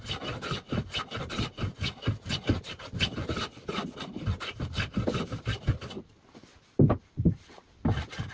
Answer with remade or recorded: recorded